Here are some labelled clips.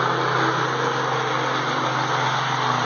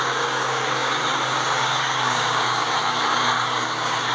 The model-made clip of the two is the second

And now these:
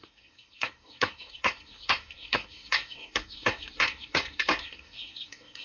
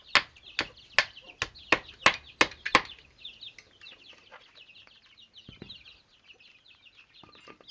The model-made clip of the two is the first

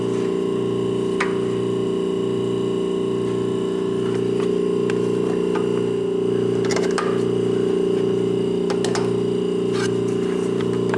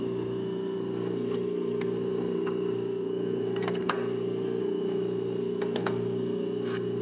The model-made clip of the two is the second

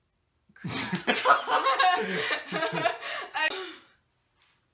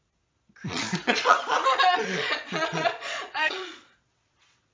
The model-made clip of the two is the second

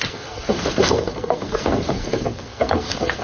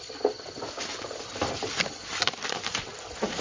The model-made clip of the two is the first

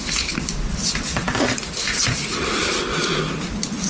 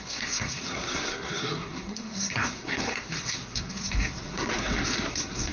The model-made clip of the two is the second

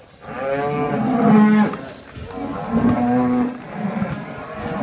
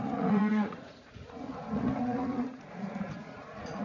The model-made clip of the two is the second